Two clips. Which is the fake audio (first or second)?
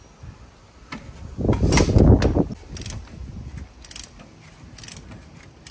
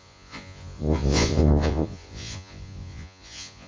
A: second